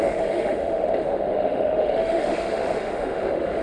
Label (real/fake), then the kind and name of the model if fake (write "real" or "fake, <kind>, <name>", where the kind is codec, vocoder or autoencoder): fake, autoencoder, DAC-VAE